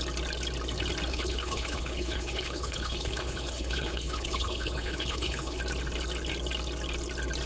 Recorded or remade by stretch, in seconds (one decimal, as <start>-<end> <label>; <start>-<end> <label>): 0.0-1.1 recorded; 1.1-5.6 remade; 5.6-7.5 recorded